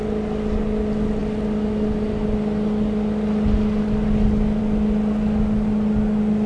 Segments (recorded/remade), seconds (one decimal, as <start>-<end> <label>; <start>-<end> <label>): 0.0-6.5 recorded